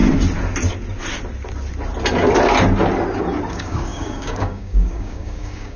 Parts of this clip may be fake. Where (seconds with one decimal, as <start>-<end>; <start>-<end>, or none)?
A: 3.5-5.8